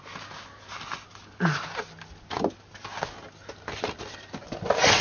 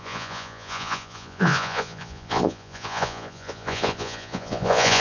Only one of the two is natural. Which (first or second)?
first